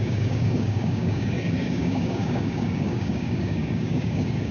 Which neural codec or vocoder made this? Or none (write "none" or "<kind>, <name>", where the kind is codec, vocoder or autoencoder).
codec, DAC